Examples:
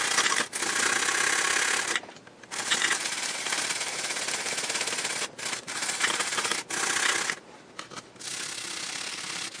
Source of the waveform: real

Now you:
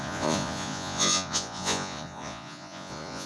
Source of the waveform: fake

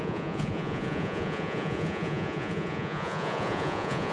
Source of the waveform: fake